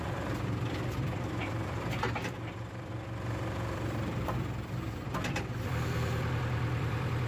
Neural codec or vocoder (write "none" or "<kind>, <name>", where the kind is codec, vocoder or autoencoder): vocoder, BigVGAN v2